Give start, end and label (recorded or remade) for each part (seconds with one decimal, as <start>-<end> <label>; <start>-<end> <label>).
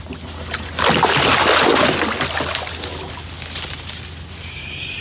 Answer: 0.0-5.0 recorded